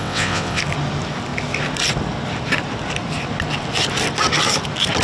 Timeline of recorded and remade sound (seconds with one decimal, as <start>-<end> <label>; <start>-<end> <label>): 0.0-0.6 remade; 0.6-5.0 recorded